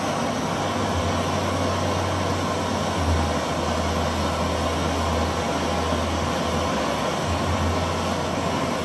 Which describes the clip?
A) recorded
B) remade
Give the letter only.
A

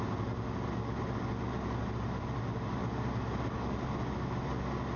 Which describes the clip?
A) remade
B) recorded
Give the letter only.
B